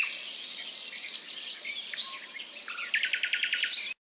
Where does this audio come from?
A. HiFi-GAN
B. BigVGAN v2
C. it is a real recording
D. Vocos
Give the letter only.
C